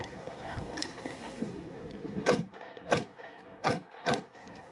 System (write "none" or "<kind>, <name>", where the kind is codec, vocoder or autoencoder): codec, SNAC